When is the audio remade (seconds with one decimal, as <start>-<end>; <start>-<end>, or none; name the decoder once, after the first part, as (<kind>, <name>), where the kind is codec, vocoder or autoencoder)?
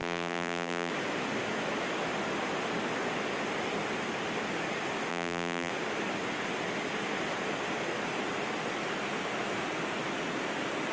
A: 0.0-0.9 (vocoder, BigVGAN v2); 5.1-5.7